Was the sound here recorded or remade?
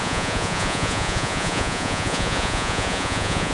remade